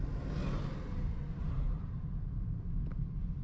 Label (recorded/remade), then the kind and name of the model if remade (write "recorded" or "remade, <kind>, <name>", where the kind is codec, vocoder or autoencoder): recorded